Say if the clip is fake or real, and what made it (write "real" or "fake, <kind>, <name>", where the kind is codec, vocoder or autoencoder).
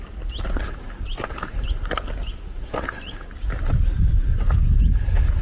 real